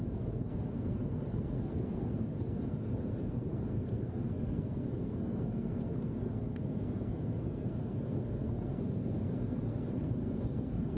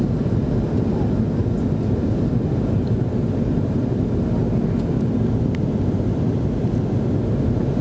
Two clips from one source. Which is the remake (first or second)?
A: first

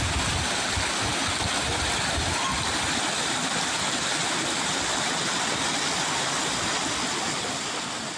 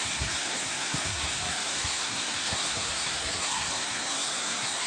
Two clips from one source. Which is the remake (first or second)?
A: second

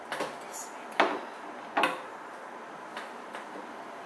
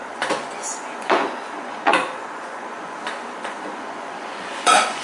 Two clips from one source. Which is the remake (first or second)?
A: second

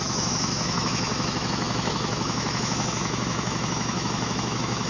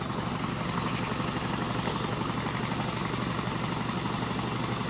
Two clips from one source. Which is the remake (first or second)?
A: first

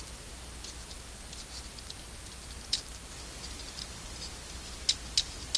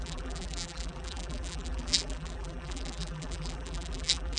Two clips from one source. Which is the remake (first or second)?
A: second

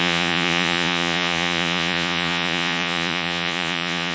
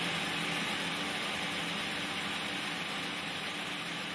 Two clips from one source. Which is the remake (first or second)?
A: first